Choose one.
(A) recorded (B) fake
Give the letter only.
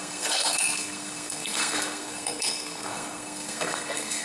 B